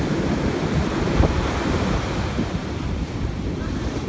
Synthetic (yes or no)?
yes